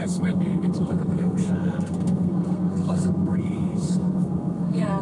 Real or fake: fake